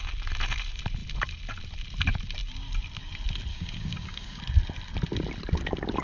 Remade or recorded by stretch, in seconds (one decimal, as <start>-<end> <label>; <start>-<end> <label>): 0.0-3.5 recorded; 3.5-4.4 remade; 4.4-6.0 recorded